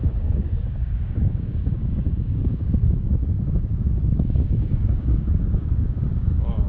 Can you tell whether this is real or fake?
fake